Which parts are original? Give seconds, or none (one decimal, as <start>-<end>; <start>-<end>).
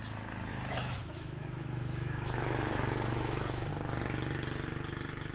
0.0-0.5; 3.7-5.3